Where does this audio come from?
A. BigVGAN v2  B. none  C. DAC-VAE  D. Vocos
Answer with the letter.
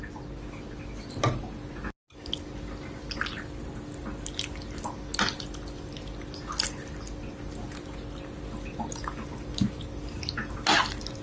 B